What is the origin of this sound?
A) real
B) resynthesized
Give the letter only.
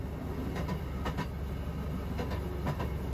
A